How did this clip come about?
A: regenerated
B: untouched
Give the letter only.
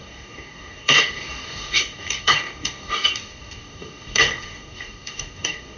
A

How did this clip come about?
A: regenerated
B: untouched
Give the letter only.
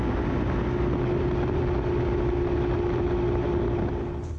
B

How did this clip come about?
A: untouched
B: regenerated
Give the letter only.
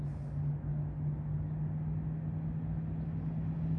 A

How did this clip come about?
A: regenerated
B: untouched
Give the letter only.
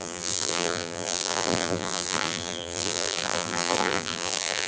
A